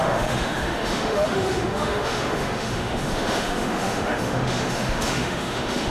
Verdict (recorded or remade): remade